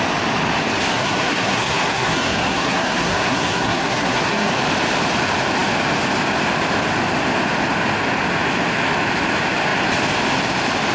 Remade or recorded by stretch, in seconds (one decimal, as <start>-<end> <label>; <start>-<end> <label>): 0.0-0.9 recorded; 0.9-4.5 remade; 4.5-10.9 recorded